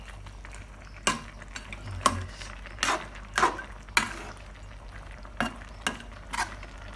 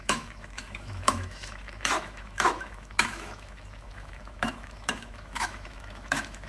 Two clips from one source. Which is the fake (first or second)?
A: second